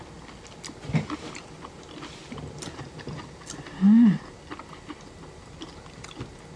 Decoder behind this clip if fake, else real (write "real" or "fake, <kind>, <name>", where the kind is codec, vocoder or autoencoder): real